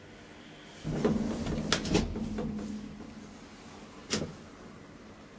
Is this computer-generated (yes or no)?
no